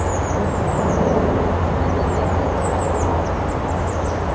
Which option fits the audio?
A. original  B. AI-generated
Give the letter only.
A